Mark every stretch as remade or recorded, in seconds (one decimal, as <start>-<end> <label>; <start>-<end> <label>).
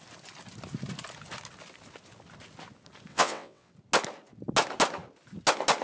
0.0-3.1 recorded; 3.1-3.7 remade; 3.7-5.8 recorded